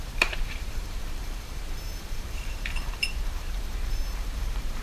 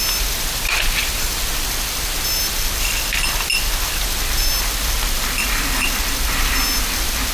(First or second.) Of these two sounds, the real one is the second